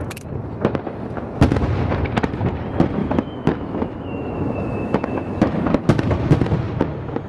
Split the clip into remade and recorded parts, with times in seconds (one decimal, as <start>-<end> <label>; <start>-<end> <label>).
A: 0.0-3.0 recorded; 3.0-5.6 remade; 5.6-7.3 recorded